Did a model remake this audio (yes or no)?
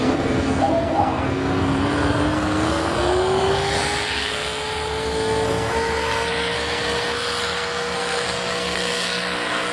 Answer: yes